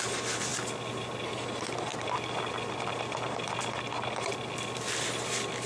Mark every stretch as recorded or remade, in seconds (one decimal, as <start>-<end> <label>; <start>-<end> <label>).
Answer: 0.0-5.7 recorded